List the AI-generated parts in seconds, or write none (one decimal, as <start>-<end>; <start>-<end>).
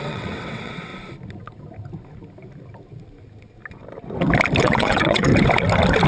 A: 0.0-0.9; 4.6-5.3